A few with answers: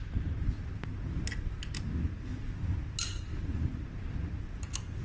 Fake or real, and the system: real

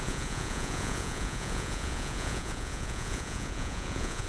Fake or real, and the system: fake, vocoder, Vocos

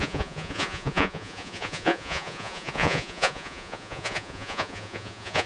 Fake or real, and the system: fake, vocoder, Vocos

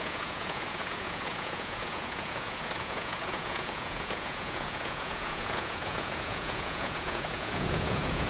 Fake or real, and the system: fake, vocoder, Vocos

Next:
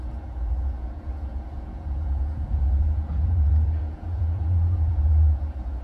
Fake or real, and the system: fake, vocoder, Vocos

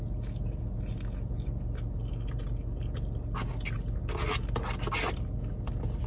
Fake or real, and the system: real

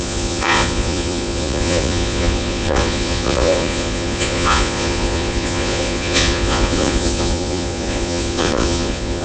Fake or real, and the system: fake, vocoder, Vocos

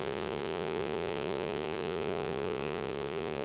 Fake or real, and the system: fake, vocoder, Vocos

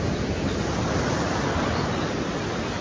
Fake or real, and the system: real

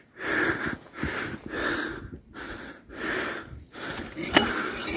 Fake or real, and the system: real